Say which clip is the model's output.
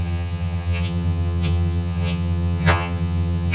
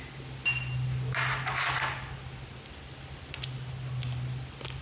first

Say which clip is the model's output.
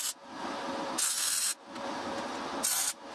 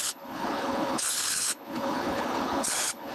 second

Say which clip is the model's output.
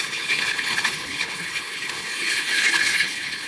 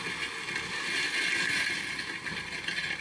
first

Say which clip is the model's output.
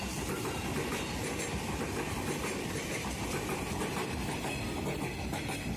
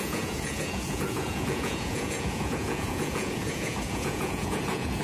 second